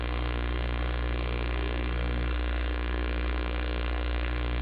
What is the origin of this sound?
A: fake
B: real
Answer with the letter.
A